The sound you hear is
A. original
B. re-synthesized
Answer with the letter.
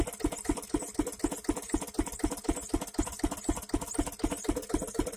A